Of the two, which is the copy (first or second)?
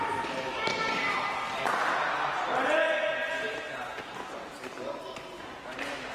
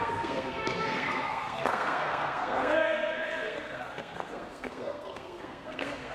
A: second